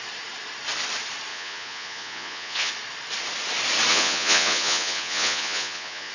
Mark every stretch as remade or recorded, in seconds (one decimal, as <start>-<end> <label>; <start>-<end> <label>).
0.0-1.3 recorded; 1.3-2.7 remade; 2.7-3.9 recorded; 3.9-6.1 remade